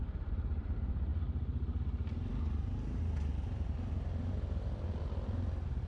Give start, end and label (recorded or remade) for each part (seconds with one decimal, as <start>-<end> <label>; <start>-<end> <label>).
0.0-5.9 recorded

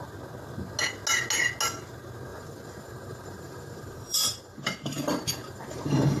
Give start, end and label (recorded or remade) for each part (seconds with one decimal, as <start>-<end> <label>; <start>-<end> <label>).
0.0-2.3 recorded; 2.3-6.2 remade

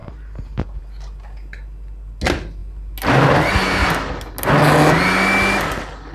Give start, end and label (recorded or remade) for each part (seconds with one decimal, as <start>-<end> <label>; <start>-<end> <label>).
0.0-0.8 remade; 0.8-6.1 recorded

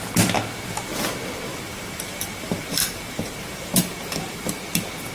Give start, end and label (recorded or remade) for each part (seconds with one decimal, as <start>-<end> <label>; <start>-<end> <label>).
0.0-1.5 recorded; 1.5-4.6 remade; 4.6-5.1 recorded